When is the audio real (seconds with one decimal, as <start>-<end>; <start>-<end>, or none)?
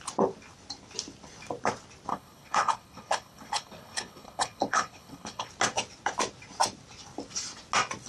0.0-2.1; 5.5-8.1